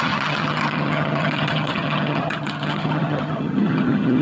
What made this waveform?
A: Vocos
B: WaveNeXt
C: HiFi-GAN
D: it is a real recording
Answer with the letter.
C